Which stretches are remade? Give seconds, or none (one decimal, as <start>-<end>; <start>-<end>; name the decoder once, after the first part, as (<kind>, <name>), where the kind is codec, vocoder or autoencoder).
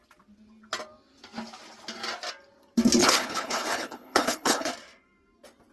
3.0-4.7 (codec, HILCodec)